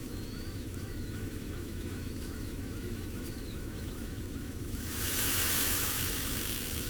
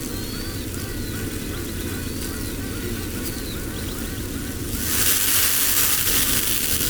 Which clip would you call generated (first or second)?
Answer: first